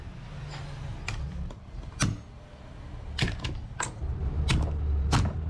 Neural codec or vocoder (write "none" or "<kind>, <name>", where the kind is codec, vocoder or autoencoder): none